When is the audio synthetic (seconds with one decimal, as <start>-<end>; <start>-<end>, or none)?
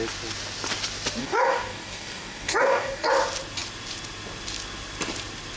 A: 1.2-3.1